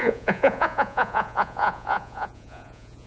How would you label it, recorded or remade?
remade